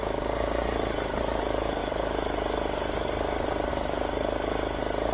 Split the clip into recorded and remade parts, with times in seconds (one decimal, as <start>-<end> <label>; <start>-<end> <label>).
0.0-5.1 recorded